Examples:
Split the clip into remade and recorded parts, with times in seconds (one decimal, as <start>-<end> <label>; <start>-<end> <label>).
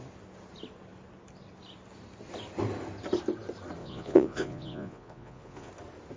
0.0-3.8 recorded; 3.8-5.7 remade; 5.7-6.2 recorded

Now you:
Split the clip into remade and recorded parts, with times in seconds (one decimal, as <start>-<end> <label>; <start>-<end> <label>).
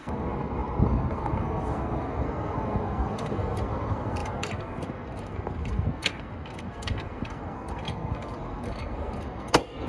0.0-9.9 remade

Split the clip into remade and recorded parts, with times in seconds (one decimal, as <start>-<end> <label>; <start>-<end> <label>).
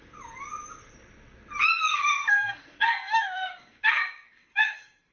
0.0-1.9 recorded; 1.9-5.1 remade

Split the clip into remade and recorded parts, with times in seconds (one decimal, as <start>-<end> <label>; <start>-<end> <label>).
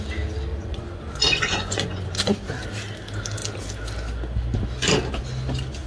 0.0-0.5 recorded; 0.5-2.5 remade; 2.5-5.9 recorded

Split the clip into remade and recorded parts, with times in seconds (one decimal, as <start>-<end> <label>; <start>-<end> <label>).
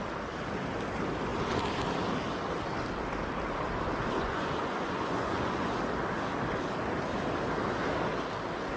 0.0-4.2 recorded; 4.2-5.8 remade; 5.8-8.8 recorded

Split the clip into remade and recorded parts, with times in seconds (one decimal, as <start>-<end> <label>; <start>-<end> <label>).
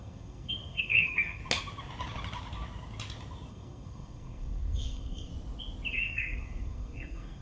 0.0-1.4 remade; 1.4-3.5 recorded; 3.5-5.3 remade; 5.3-5.9 recorded; 5.9-7.4 remade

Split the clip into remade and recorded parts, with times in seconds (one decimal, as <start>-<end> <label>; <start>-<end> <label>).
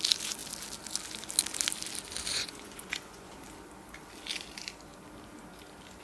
0.0-2.3 recorded; 2.3-3.3 remade; 3.3-6.0 recorded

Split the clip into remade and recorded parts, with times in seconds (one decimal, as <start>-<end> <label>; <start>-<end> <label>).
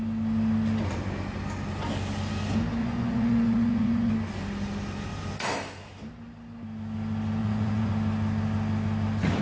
0.0-2.8 recorded; 2.8-4.1 remade; 4.1-7.4 recorded; 7.4-7.9 remade; 7.9-9.4 recorded